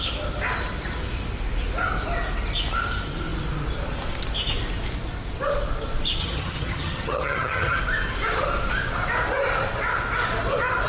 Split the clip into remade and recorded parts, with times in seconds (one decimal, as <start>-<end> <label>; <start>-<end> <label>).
0.0-6.2 recorded; 6.2-7.8 remade; 7.8-10.9 recorded